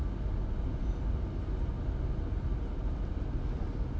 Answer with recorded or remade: recorded